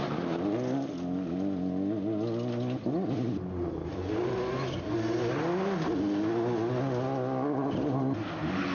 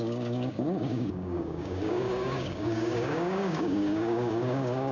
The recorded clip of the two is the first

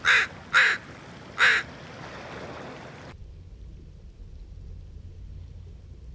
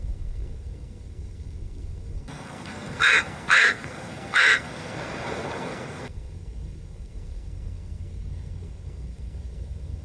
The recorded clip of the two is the first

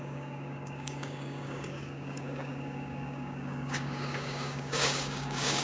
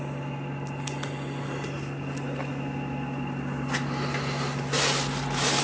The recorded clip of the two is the second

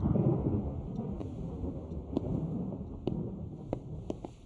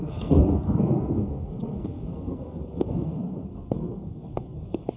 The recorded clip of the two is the first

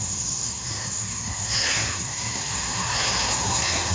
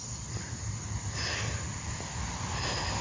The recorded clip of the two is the second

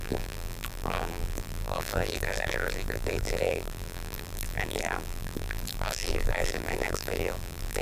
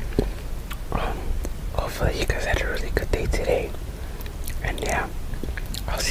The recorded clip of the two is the second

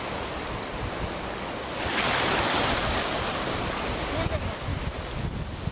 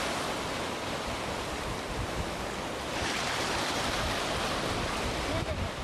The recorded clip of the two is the first